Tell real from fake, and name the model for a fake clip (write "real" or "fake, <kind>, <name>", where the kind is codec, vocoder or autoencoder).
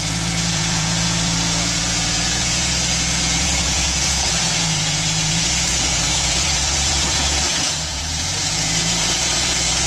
fake, vocoder, Vocos